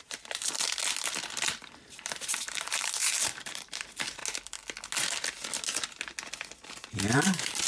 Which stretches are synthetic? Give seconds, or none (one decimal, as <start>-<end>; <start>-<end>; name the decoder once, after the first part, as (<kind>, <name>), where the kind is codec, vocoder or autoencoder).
0.0-0.8 (vocoder, BigVGAN v2); 1.9-4.2; 6.9-7.7